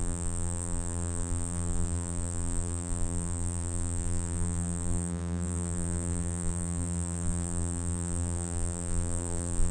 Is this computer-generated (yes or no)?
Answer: yes